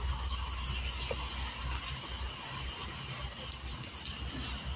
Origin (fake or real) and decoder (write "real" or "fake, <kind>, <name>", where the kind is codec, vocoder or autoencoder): real